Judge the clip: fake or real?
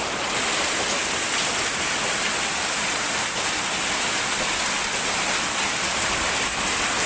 real